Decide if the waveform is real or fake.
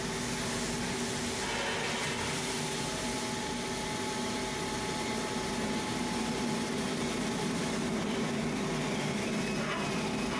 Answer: real